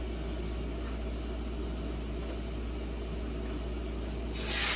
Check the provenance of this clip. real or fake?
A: real